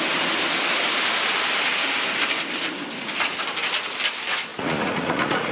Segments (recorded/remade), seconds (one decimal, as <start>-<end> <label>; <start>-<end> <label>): 0.0-4.5 recorded; 4.5-5.5 remade